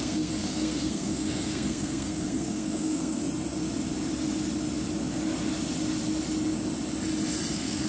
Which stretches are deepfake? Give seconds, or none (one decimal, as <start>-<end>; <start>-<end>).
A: 0.0-3.2; 7.5-7.9